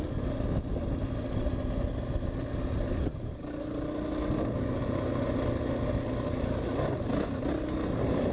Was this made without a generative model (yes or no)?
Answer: yes